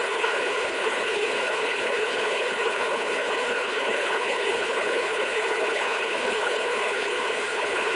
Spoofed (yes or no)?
yes